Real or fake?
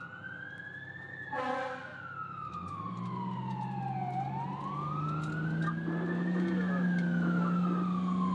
real